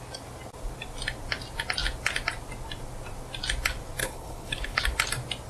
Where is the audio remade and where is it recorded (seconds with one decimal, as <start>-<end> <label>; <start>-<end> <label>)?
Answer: 0.0-4.0 recorded; 4.0-4.8 remade; 4.8-5.5 recorded